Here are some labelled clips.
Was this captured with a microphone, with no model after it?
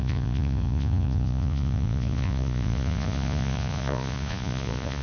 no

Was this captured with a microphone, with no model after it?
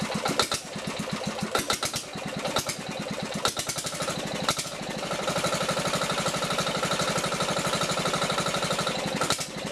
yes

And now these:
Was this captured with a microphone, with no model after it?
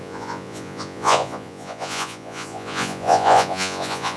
no